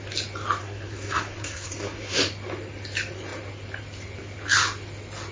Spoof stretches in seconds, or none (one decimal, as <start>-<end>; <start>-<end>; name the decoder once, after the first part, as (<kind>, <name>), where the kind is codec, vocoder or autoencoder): 0.6-2.2 (codec, SNAC)